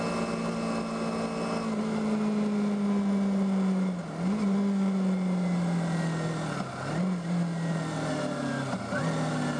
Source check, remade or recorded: recorded